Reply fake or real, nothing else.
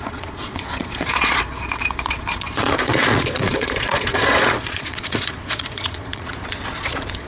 fake